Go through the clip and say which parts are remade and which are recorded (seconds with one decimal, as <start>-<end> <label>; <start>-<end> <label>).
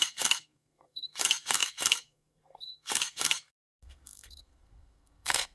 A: 0.0-5.5 remade